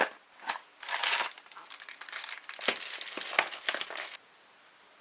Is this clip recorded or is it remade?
recorded